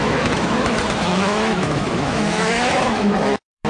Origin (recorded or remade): remade